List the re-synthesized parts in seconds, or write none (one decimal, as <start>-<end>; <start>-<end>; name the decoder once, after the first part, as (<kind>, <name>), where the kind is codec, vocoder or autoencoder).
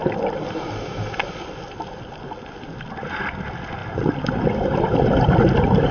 none